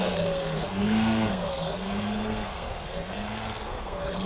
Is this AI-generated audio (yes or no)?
yes